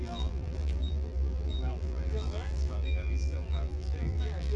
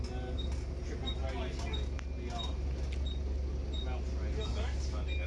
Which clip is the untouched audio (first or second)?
second